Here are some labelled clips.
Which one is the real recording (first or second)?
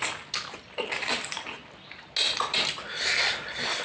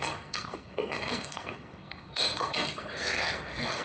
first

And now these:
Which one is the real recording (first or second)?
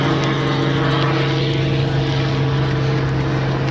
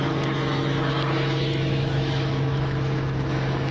first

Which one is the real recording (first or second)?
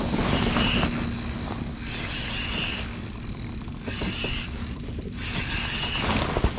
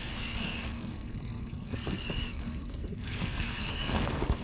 first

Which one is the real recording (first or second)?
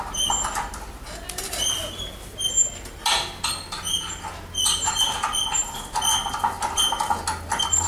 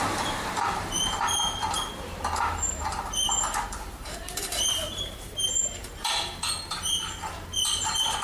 first